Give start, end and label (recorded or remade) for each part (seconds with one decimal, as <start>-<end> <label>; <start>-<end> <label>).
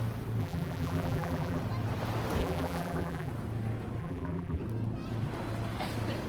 0.0-0.4 recorded; 0.4-1.6 remade; 1.6-2.4 recorded; 2.4-3.3 remade; 3.3-4.0 recorded; 4.0-4.6 remade; 4.6-6.3 recorded